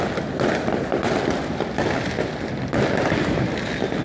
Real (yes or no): yes